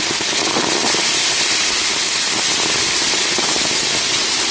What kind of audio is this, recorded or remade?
recorded